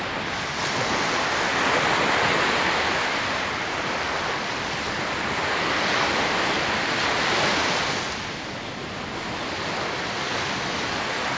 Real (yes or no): yes